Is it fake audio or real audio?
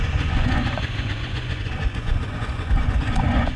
fake